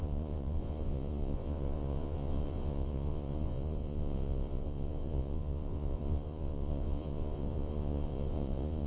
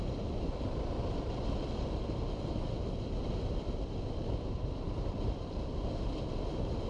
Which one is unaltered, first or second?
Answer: second